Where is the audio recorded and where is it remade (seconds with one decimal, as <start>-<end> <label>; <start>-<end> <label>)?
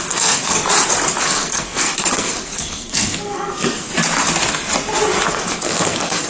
0.0-0.6 remade; 0.6-1.2 recorded; 1.2-3.9 remade; 3.9-5.3 recorded; 5.3-6.3 remade